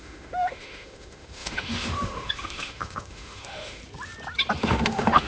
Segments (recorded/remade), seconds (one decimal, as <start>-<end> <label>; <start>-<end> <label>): 0.0-3.8 remade; 3.8-4.6 recorded; 4.6-5.3 remade